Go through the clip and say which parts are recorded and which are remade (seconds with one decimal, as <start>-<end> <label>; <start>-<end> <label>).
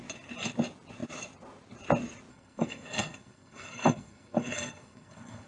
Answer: 0.0-2.3 recorded; 2.3-5.5 remade